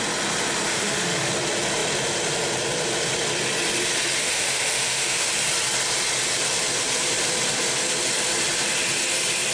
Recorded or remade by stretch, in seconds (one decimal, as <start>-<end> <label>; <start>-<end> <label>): 0.0-0.7 recorded; 0.7-1.3 remade; 1.3-4.2 recorded; 4.2-5.3 remade; 5.3-9.5 recorded